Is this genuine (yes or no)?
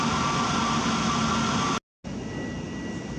yes